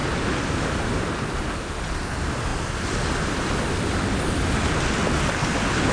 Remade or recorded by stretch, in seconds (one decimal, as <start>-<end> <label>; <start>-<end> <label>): 0.0-5.9 recorded